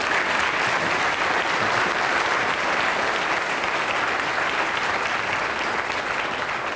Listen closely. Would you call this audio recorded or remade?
recorded